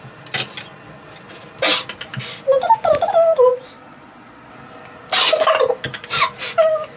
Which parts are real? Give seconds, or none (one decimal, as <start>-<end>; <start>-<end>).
0.0-3.5; 4.5-7.0